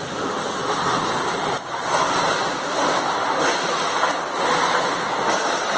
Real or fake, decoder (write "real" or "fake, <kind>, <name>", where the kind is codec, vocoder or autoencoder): real